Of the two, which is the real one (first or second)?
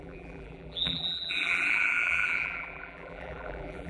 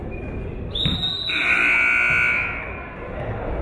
second